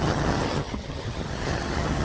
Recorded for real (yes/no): no